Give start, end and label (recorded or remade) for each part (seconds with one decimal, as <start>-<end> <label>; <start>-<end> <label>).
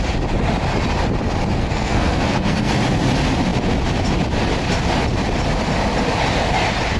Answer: 0.0-1.6 recorded; 1.6-2.8 remade; 2.8-7.0 recorded